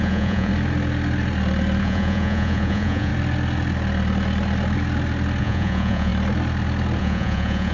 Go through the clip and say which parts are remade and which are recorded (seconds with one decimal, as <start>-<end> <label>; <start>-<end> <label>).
0.0-0.5 remade; 0.5-1.8 recorded; 1.8-3.1 remade; 3.1-5.4 recorded; 5.4-6.1 remade; 6.1-7.0 recorded; 7.0-7.7 remade